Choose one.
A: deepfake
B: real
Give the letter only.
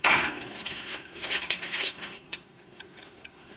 A